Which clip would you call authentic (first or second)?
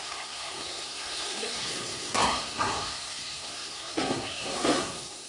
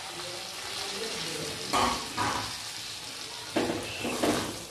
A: second